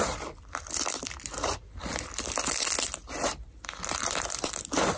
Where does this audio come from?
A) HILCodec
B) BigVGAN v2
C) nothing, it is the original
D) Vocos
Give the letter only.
B